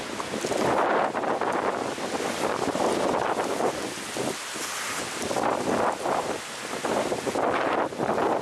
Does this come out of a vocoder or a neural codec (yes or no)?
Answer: no